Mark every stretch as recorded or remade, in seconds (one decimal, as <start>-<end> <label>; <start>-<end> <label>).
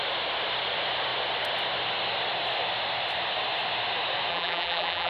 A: 0.0-4.3 recorded; 4.3-5.1 remade